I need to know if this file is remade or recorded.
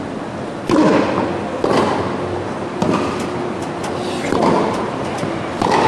recorded